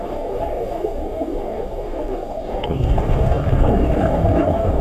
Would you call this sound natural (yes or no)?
no